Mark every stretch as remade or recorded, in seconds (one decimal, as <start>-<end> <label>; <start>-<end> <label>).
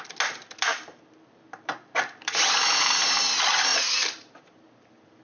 0.0-0.7 recorded; 0.7-3.2 remade; 3.2-3.7 recorded; 3.7-5.2 remade